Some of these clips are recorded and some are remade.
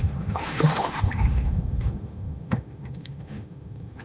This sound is remade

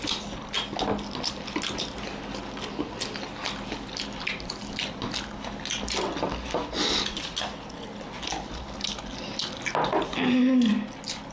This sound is recorded